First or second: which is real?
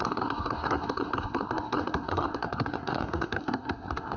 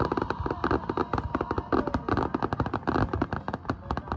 second